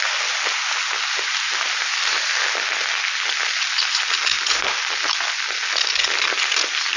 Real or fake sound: real